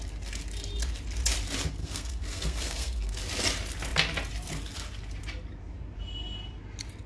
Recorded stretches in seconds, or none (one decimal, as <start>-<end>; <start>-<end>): 0.0-1.8; 3.2-7.1